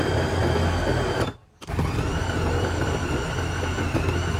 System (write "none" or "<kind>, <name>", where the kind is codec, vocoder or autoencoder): none